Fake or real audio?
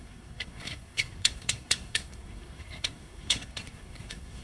fake